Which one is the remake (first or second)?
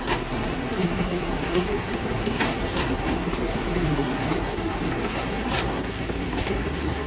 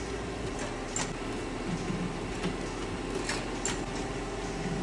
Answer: first